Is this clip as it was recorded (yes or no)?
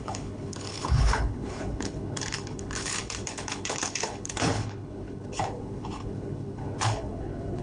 no